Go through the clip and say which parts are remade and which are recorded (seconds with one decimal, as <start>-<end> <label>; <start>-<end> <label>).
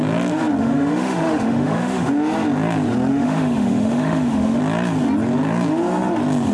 0.0-0.6 recorded; 0.6-2.1 remade; 2.1-3.1 recorded; 3.1-4.6 remade; 4.6-6.5 recorded